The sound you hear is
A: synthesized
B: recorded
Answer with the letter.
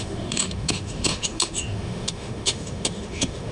A